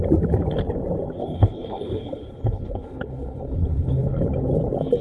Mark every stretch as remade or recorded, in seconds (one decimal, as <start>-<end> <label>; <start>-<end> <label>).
0.0-1.2 recorded; 1.2-4.2 remade; 4.2-5.0 recorded